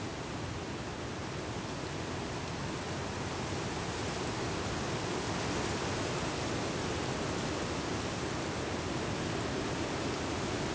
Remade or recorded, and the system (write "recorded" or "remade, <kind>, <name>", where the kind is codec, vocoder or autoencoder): recorded